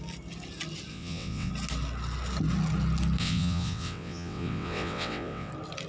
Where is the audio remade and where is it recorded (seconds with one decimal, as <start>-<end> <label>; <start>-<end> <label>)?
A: 0.0-0.9 recorded; 0.9-1.5 remade; 1.5-3.2 recorded; 3.2-5.5 remade; 5.5-5.9 recorded